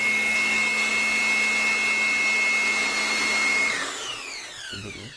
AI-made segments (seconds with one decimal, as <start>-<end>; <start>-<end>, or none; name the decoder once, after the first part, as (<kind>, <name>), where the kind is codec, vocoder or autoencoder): 0.0-0.9 (codec, DAC); 3.6-5.2